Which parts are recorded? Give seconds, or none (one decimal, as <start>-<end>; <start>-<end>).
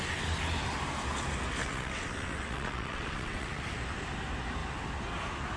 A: 0.0-1.6; 3.6-5.6